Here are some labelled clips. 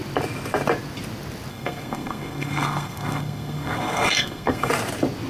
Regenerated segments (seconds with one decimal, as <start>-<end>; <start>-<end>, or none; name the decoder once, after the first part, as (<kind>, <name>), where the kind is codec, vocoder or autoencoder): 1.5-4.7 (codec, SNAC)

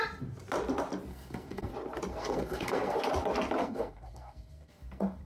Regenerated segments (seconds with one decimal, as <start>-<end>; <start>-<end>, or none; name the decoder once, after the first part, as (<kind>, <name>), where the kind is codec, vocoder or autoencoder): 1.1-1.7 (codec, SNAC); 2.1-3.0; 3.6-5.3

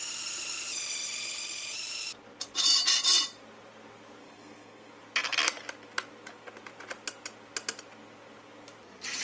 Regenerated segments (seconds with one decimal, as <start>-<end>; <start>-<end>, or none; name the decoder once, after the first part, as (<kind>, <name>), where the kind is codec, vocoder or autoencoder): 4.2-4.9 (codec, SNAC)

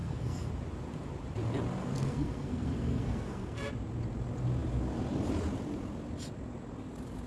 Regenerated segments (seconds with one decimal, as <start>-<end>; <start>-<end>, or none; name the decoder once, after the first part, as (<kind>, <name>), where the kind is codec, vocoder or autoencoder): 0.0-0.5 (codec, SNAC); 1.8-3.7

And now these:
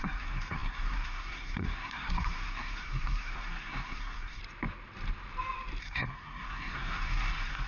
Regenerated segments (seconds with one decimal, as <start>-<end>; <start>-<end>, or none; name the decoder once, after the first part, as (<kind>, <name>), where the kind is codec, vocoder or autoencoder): 0.0-4.4 (codec, SNAC); 5.8-7.7